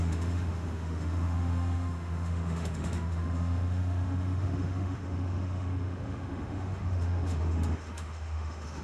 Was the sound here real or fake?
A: fake